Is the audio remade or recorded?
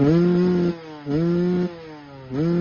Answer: recorded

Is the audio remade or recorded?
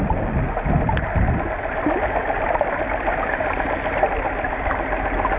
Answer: recorded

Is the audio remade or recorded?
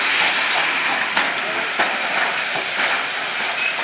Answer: recorded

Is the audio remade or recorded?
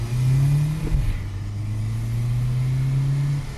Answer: recorded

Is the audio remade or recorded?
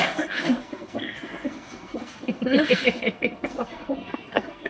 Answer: remade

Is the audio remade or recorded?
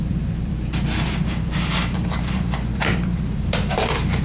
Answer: remade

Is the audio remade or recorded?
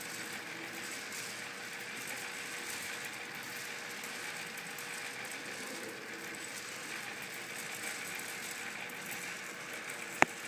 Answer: recorded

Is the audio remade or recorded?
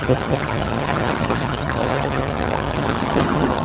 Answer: remade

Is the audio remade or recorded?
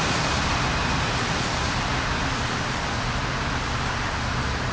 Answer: recorded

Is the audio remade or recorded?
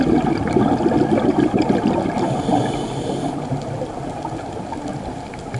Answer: recorded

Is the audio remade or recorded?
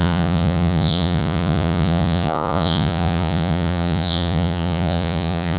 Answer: remade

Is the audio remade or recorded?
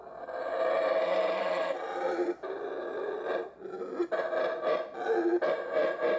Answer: recorded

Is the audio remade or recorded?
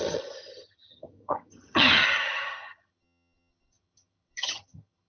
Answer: remade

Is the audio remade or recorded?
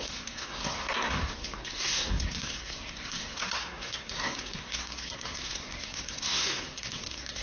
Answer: remade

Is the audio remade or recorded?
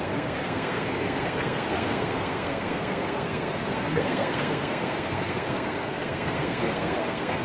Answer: remade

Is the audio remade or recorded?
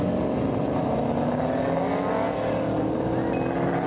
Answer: recorded